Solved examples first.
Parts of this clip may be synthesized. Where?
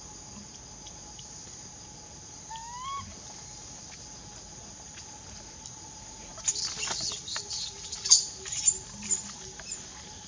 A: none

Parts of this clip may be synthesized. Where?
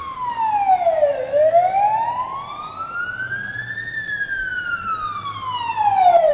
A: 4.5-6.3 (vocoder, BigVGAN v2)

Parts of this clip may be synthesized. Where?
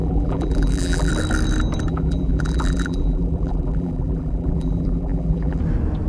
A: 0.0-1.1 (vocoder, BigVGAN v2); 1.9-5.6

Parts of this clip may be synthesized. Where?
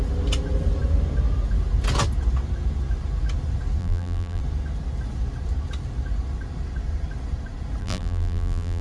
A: 3.8-4.4 (vocoder, BigVGAN v2); 7.8-8.8